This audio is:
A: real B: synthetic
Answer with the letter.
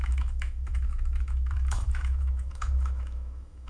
B